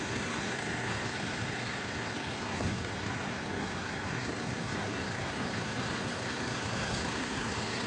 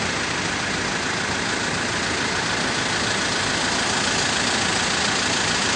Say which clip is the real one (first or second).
second